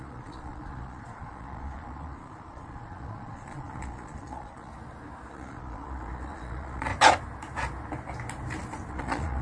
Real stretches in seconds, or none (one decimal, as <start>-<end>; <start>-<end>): 4.7-5.3; 6.9-8.9